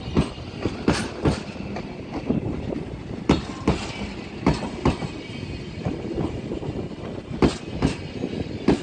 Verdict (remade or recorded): recorded